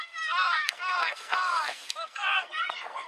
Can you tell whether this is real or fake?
fake